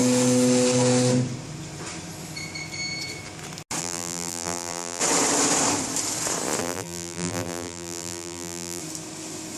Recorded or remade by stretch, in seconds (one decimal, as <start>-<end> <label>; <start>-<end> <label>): 0.0-3.8 recorded; 3.8-5.0 remade; 5.0-6.6 recorded; 6.6-8.8 remade; 8.8-9.6 recorded